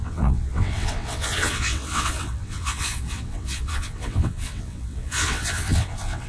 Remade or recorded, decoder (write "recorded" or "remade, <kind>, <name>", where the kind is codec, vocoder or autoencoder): remade, vocoder, WaveNeXt